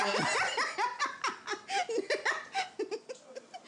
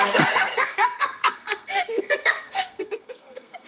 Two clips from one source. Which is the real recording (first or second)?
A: first